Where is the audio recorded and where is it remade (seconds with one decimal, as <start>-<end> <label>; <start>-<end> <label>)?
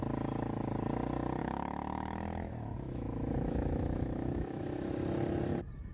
0.0-1.4 recorded; 1.4-4.6 remade; 4.6-5.9 recorded